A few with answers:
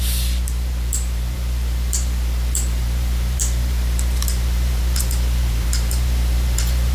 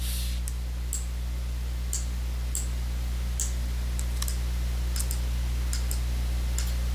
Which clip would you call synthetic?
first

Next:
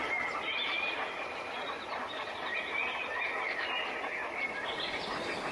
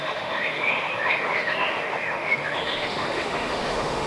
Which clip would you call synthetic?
second